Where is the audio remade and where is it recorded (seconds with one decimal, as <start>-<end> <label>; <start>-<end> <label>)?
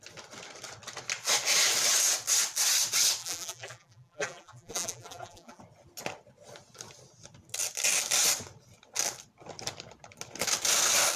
0.0-3.2 recorded; 3.2-5.6 remade; 5.6-11.2 recorded